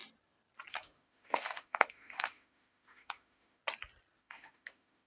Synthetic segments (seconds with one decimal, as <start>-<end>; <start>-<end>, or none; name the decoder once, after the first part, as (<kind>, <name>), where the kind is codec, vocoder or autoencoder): 0.7-3.6 (autoencoder, DAC-VAE); 4.2-5.1